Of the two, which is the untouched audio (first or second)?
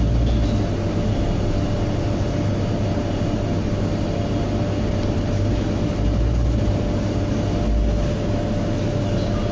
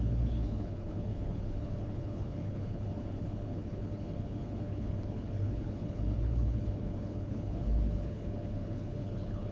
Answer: first